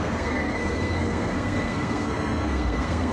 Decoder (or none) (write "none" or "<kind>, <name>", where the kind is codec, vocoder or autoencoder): codec, SNAC